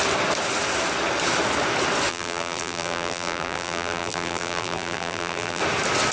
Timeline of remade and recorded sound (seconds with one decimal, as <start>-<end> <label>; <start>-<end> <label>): 0.0-2.1 recorded; 2.1-5.6 remade; 5.6-6.1 recorded